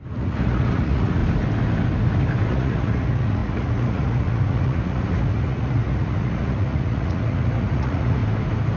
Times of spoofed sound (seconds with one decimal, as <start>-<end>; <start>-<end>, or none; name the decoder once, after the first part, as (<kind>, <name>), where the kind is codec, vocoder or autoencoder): 0.0-1.2 (vocoder, Vocos); 2.5-8.2